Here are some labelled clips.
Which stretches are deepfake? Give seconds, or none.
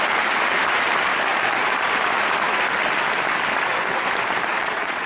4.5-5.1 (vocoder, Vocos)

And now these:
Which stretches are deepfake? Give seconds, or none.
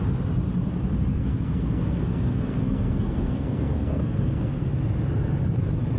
1.1-4.7 (codec, SNAC)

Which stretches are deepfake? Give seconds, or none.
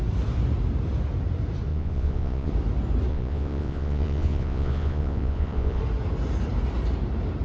1.7-2.5 (vocoder, Vocos); 3.1-5.8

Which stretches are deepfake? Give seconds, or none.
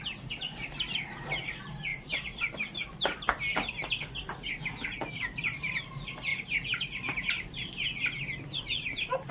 none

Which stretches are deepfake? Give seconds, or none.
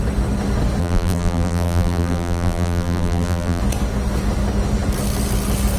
0.8-3.6 (vocoder, BigVGAN v2)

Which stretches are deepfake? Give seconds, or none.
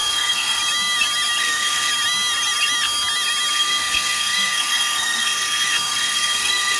0.0-0.6 (codec, SNAC); 1.4-1.9; 3.5-6.8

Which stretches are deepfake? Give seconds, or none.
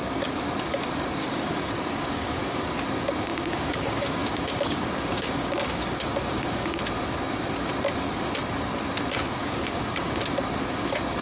1.2-2.6 (codec, DAC); 3.3-6.8; 9.4-10.2